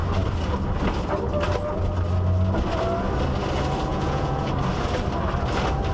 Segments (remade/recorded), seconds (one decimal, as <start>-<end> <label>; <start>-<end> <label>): 0.0-3.9 recorded; 3.9-4.5 remade; 4.5-5.9 recorded